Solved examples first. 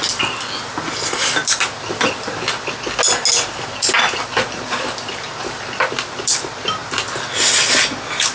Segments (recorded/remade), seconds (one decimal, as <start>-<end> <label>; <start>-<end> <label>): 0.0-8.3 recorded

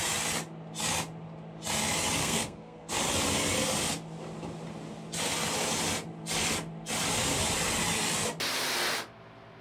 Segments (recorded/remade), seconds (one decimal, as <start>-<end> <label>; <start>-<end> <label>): 0.0-2.2 recorded; 2.2-2.9 remade; 2.9-9.6 recorded

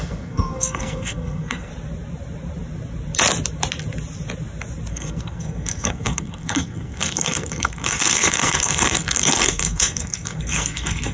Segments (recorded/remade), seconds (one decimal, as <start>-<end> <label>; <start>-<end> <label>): 0.0-1.7 remade; 1.7-4.9 recorded; 4.9-11.1 remade

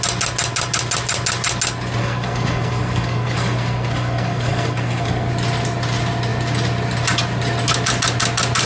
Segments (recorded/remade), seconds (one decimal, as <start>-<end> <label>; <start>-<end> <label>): 0.0-2.0 recorded; 2.0-5.3 remade; 5.3-8.7 recorded